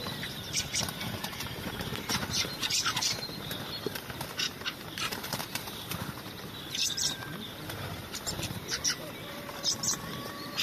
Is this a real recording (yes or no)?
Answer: no